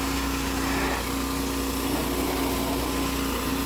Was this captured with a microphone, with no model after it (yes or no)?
yes